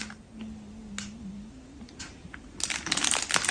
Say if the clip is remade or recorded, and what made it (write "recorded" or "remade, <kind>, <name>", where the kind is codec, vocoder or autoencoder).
recorded